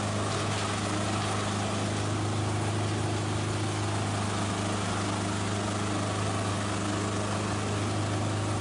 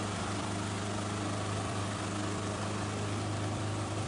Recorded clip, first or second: first